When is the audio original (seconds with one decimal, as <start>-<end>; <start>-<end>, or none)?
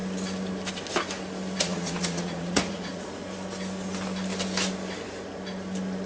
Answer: 0.0-1.6; 3.2-6.1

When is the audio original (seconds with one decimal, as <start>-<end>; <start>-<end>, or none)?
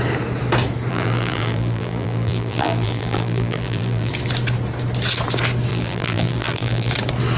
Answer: 0.0-0.9; 4.1-5.7; 6.9-7.4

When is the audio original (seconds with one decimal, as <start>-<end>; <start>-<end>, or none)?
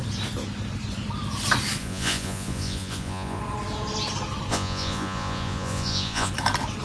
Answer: 0.0-1.8; 3.4-4.5; 6.3-6.8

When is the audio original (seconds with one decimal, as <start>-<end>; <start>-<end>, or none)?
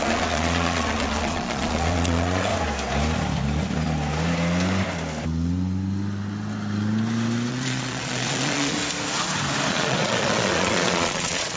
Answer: 2.5-7.5; 8.8-9.7